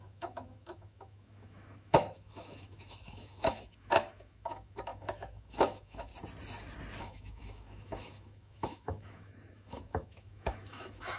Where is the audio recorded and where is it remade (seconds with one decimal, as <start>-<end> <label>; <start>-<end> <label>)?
0.0-6.1 remade; 6.1-7.0 recorded; 7.0-11.2 remade